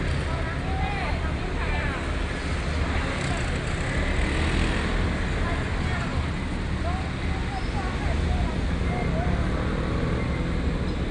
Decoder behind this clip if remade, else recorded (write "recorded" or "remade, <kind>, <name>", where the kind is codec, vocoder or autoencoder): recorded